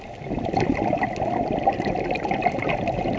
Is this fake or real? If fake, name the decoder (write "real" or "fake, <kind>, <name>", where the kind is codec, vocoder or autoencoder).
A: real